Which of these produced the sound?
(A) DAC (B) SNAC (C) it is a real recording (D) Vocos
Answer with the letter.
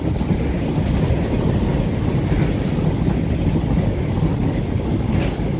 C